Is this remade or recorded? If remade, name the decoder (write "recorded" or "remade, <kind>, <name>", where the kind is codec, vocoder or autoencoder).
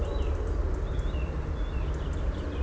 recorded